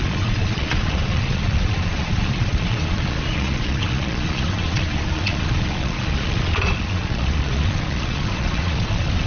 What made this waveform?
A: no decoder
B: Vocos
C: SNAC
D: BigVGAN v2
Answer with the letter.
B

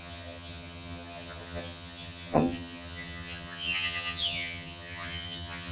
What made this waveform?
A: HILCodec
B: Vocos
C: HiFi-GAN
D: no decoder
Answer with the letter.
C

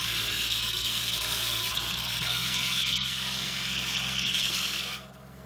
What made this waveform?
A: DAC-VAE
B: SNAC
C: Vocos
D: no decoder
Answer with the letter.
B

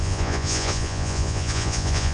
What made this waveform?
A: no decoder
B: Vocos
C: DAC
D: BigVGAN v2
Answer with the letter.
B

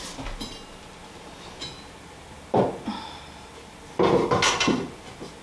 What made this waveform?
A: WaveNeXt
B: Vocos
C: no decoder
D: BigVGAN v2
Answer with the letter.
C